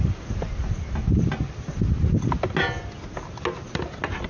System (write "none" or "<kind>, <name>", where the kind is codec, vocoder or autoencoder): none